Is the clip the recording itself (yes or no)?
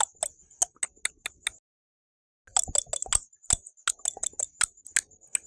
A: yes